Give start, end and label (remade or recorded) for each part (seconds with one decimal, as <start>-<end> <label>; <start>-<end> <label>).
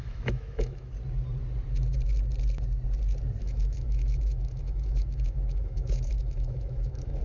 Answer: 0.0-0.9 remade; 0.9-3.4 recorded; 3.4-7.2 remade